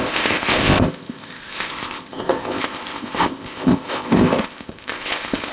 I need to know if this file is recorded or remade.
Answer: remade